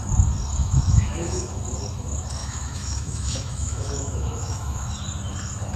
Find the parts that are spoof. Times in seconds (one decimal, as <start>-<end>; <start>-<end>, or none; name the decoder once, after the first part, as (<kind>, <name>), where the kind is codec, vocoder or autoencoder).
0.6-1.6 (autoencoder, DAC-VAE); 2.4-4.9

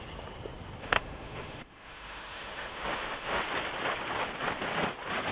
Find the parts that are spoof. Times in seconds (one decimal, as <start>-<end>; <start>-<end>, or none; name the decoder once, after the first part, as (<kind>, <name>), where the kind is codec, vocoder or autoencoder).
0.8-3.4 (autoencoder, DAC-VAE)

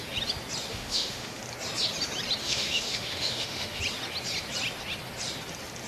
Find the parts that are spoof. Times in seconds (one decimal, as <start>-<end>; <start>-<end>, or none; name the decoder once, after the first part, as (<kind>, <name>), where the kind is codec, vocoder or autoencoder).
0.7-1.4 (autoencoder, DAC-VAE); 2.4-3.8

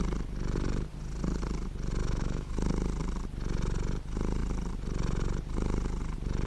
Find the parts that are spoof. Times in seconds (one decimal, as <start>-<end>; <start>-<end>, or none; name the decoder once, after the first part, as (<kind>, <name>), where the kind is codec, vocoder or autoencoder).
2.0-2.5 (autoencoder, DAC-VAE)

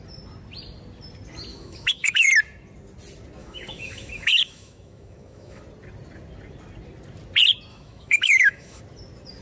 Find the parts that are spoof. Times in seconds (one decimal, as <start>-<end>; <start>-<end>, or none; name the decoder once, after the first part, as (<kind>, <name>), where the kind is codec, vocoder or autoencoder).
1.5-2.3 (autoencoder, DAC-VAE); 3.4-5.6; 7.7-8.8

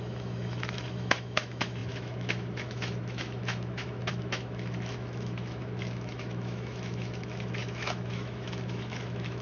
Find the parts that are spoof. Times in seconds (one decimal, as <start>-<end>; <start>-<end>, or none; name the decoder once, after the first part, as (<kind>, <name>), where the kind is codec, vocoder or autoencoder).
0.0-9.4 (autoencoder, DAC-VAE)

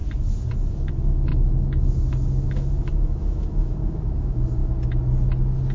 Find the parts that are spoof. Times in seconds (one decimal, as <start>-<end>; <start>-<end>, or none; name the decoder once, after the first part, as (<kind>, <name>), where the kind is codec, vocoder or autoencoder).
0.7-4.6 (autoencoder, DAC-VAE)

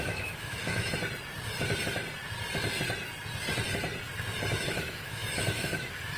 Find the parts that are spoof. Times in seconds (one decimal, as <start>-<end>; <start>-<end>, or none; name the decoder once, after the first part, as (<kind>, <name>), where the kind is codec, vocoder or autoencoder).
0.0-0.9 (autoencoder, DAC-VAE); 4.6-6.2